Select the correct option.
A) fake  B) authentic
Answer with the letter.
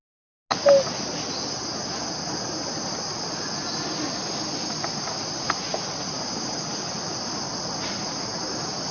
B